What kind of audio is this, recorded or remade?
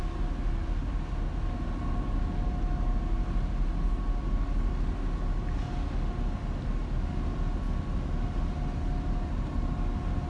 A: recorded